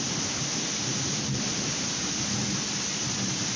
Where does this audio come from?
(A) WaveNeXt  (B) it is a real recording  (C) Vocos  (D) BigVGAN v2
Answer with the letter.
B